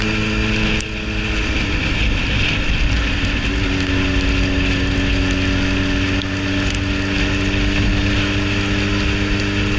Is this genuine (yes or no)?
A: yes